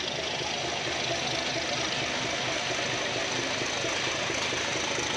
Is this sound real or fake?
real